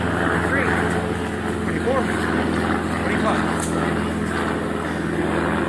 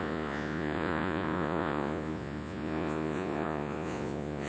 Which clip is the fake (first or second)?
second